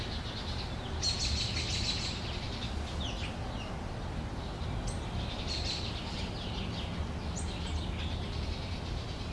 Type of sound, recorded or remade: recorded